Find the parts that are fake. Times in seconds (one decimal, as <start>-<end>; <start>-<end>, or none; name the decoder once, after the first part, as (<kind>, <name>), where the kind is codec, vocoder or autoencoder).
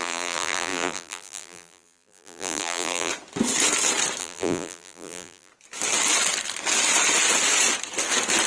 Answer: 0.0-3.1 (vocoder, BigVGAN v2); 4.2-5.5